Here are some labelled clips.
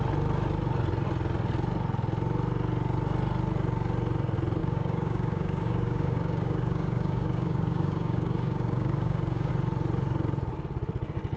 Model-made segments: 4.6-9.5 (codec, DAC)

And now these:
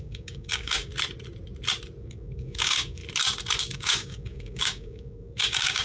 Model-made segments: 0.0-0.9 (codec, DAC); 2.0-3.0; 3.6-5.8

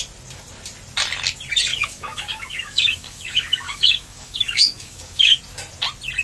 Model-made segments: 1.7-5.4 (codec, DAC)

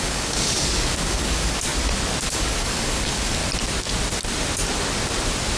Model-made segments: 0.0-1.7 (codec, DAC); 2.2-3.4

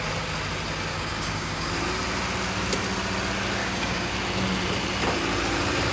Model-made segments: 0.9-1.7 (codec, DAC); 3.6-4.1